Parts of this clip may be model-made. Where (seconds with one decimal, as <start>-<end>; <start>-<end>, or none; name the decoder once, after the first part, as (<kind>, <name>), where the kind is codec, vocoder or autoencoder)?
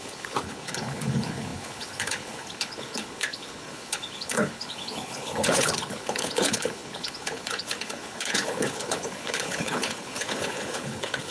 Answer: 0.0-11.3 (codec, HILCodec)